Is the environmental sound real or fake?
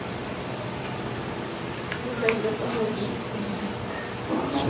real